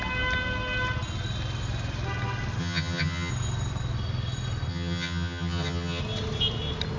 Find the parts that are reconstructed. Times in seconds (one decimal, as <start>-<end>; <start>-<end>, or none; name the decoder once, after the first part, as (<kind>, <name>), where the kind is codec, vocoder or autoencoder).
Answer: 2.6-3.3 (vocoder, HiFi-GAN); 4.7-6.0

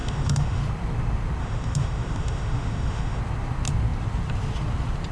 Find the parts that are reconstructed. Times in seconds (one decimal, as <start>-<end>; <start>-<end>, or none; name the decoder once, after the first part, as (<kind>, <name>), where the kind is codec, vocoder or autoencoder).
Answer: 0.0-0.6 (autoencoder, DAC-VAE); 1.4-3.2

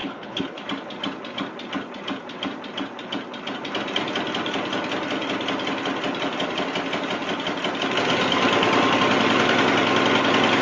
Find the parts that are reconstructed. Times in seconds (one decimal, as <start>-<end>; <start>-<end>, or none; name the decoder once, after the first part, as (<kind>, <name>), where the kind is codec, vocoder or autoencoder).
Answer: 0.0-0.6 (codec, HILCodec)

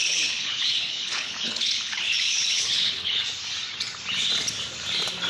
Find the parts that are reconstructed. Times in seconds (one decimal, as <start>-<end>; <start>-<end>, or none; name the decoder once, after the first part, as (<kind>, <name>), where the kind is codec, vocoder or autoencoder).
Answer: 0.0-3.2 (codec, HILCodec)

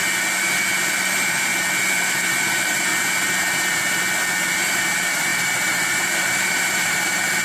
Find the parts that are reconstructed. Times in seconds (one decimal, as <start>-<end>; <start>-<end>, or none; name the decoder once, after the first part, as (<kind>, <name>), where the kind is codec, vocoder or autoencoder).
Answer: 0.9-1.5 (vocoder, BigVGAN v2); 2.1-2.9; 4.7-7.4

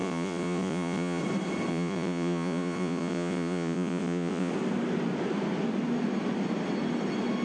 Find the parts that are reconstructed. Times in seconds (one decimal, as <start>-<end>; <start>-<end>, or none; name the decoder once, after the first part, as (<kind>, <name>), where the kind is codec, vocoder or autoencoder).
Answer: 0.0-1.2 (vocoder, Vocos); 1.7-4.5